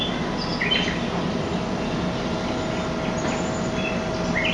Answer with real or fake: real